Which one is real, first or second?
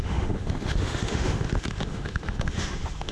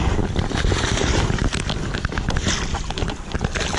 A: second